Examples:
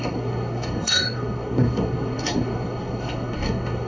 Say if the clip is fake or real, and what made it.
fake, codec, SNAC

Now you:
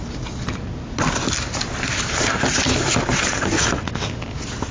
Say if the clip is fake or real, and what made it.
real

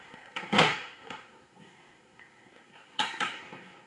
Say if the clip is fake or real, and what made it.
fake, codec, SNAC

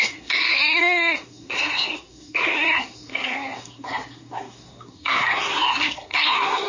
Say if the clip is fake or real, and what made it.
fake, codec, SNAC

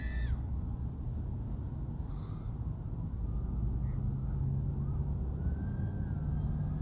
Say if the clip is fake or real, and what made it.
real